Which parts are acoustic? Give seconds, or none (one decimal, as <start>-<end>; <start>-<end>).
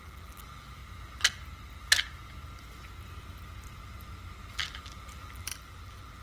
0.8-4.5